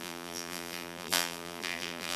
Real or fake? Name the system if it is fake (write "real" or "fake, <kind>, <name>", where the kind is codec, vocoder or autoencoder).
fake, vocoder, BigVGAN v2